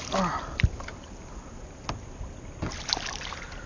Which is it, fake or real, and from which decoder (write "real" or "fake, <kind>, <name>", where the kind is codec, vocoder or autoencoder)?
real